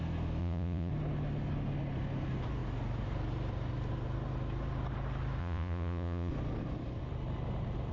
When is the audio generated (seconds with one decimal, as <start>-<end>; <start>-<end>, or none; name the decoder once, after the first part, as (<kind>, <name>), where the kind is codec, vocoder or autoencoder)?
0.4-0.9 (vocoder, Vocos); 5.4-6.3